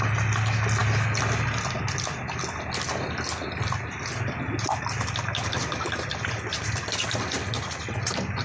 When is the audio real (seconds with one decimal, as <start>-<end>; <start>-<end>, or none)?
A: 0.0-8.4